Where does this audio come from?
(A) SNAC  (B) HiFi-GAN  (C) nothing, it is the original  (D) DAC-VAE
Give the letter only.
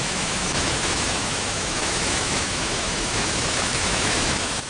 D